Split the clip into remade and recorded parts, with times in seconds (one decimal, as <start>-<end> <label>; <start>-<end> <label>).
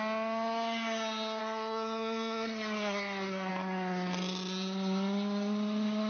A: 0.0-1.4 recorded; 1.4-3.5 remade; 3.5-6.1 recorded